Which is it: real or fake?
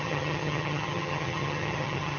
fake